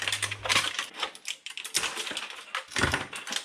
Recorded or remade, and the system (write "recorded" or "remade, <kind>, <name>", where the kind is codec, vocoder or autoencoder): recorded